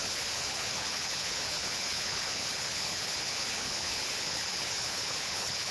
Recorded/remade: remade